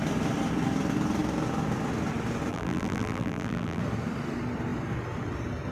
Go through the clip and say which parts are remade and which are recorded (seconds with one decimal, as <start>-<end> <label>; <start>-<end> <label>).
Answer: 0.0-2.5 recorded; 2.5-3.8 remade; 3.8-5.7 recorded